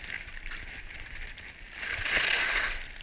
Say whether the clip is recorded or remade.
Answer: recorded